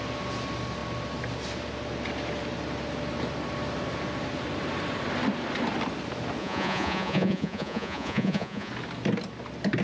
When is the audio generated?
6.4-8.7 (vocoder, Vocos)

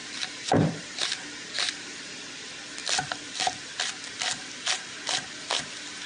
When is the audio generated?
0.0-2.3 (vocoder, BigVGAN v2)

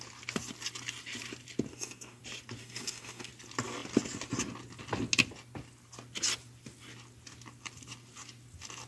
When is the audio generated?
1.7-2.2 (codec, DAC); 2.6-3.3

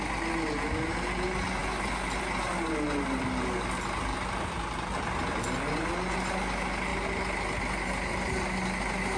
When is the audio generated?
none